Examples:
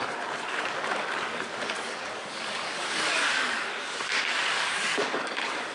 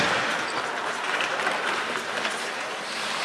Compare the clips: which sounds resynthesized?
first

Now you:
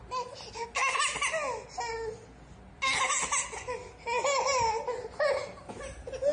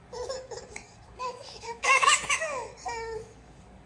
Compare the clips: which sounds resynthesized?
second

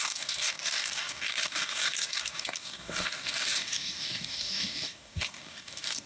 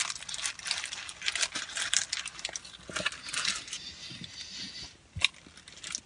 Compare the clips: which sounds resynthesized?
first